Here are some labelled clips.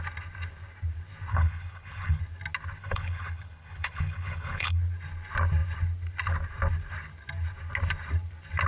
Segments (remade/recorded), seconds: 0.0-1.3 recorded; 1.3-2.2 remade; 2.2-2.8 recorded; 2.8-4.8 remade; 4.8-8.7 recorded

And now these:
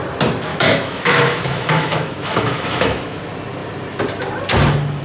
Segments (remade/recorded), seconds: 0.0-0.5 recorded; 0.5-3.2 remade; 3.2-5.0 recorded

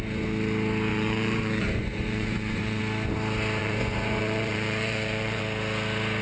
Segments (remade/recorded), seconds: 0.0-0.9 recorded; 0.9-2.8 remade; 2.8-3.6 recorded; 3.6-5.4 remade; 5.4-6.2 recorded

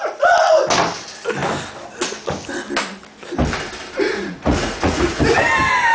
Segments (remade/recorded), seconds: 0.0-4.1 recorded; 4.1-5.2 remade; 5.2-5.9 recorded

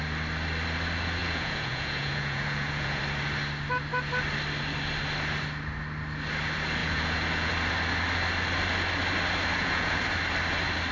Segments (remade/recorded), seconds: 0.0-1.2 recorded; 1.2-3.0 remade; 3.0-6.8 recorded; 6.8-7.5 remade; 7.5-9.5 recorded; 9.5-10.0 remade; 10.0-10.9 recorded

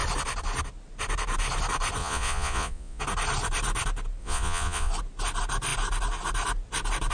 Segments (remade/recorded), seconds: 0.0-2.0 recorded; 2.0-3.0 remade; 3.0-4.2 recorded; 4.2-4.9 remade; 4.9-7.1 recorded